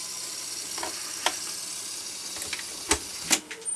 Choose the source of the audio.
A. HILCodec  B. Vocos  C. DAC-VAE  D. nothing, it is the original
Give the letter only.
D